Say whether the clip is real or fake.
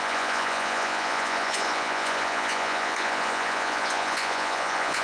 fake